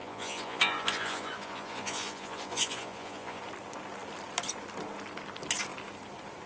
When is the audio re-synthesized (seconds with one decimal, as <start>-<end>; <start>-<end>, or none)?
0.0-3.4